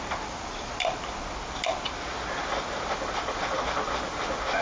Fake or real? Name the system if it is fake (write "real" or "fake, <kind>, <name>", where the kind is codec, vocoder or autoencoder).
real